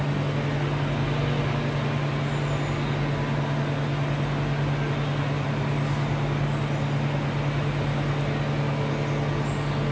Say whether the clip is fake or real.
real